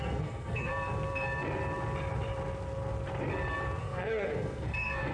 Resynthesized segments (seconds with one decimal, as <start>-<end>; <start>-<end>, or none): 0.0-0.7; 3.8-5.1